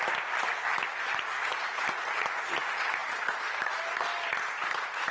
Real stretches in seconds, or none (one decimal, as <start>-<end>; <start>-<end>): 0.0-5.1